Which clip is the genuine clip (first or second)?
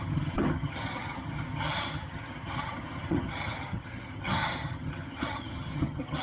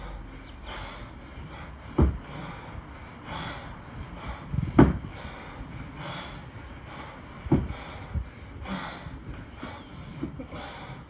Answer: second